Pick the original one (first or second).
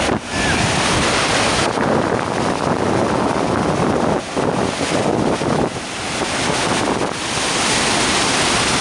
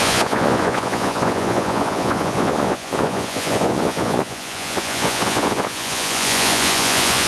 first